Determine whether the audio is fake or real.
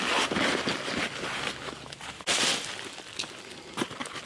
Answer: real